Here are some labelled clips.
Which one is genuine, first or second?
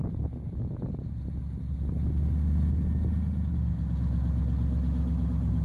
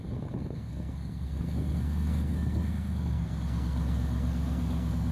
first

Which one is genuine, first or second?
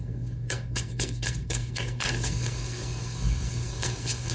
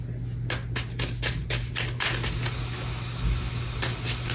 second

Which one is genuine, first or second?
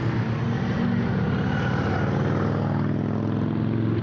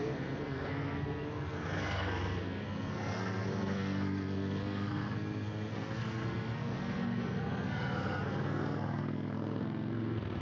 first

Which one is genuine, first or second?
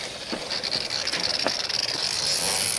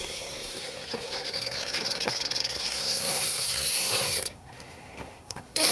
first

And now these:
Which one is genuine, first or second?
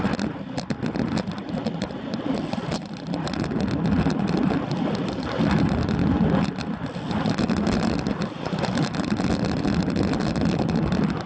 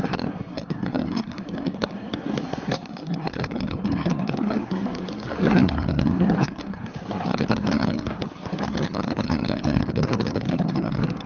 first